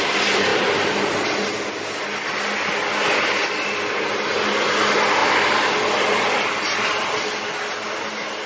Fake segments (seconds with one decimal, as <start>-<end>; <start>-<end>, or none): none